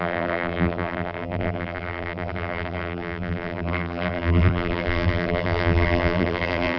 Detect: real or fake fake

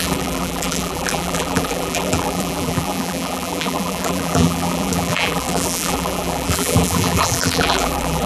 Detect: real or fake fake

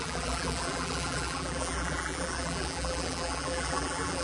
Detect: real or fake fake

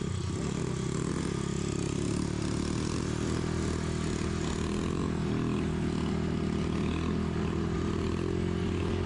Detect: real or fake real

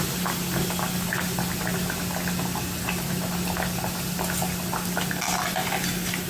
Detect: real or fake real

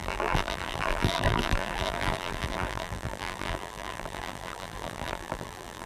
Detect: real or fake fake